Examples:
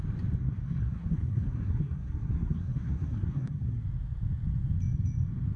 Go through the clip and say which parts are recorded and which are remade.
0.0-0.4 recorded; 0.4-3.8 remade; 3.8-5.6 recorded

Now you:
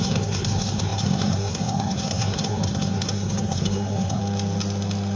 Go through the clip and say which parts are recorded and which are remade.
0.0-4.2 remade; 4.2-5.2 recorded

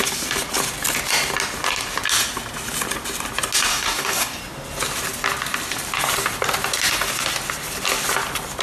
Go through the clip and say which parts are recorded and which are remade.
0.0-3.7 recorded; 3.7-4.4 remade; 4.4-8.6 recorded